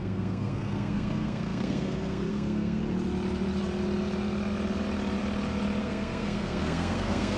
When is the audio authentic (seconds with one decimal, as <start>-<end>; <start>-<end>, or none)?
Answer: 2.8-5.8